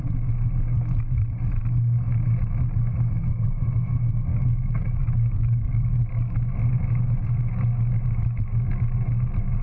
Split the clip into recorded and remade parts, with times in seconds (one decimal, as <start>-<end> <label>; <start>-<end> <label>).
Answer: 0.0-4.3 recorded; 4.3-6.1 remade; 6.1-9.6 recorded